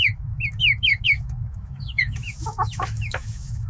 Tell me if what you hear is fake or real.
fake